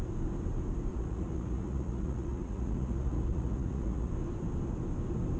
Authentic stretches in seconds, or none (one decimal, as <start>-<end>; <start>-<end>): 0.0-0.9; 4.1-5.4